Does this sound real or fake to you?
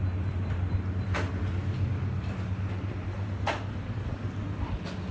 real